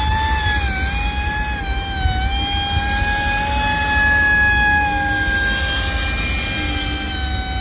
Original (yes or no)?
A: yes